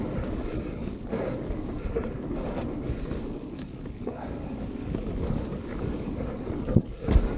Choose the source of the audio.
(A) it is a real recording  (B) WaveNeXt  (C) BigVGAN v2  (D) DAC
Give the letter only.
D